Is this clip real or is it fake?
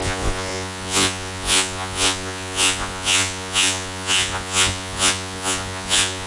fake